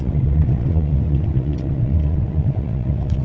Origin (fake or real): fake